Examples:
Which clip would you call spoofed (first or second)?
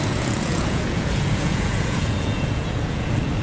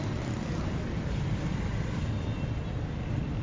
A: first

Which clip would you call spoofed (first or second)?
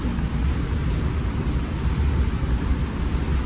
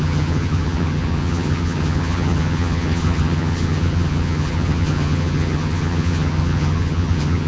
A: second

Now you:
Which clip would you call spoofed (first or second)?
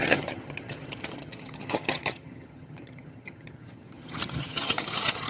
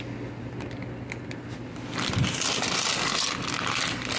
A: first